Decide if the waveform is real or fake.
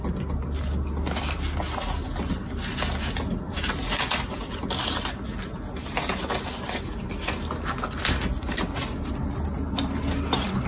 real